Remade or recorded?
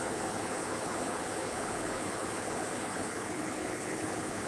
remade